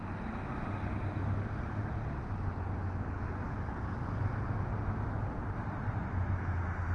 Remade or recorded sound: recorded